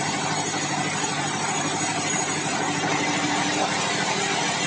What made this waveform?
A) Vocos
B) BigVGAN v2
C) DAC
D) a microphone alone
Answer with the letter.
B